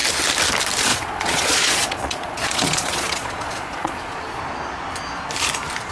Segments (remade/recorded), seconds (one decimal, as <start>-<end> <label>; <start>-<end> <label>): 0.0-0.9 recorded; 0.9-4.4 remade; 4.4-5.9 recorded